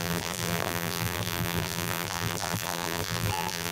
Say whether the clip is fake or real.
fake